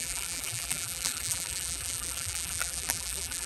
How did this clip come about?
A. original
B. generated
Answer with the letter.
B